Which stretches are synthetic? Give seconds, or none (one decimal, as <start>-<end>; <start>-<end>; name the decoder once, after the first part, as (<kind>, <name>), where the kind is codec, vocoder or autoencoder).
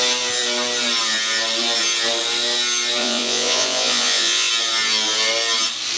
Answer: 3.0-4.5 (vocoder, Vocos)